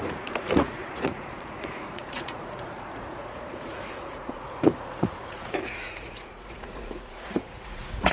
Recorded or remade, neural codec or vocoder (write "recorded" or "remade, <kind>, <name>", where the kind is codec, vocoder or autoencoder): remade, vocoder, Vocos